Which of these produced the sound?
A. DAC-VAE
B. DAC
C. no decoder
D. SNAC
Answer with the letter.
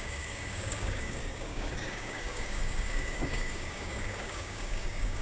B